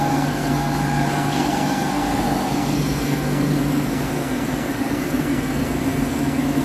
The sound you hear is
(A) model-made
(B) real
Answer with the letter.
A